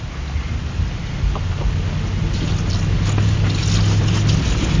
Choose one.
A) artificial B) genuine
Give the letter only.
B